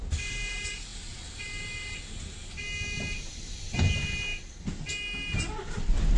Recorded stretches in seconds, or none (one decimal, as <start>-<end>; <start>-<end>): 0.0-6.2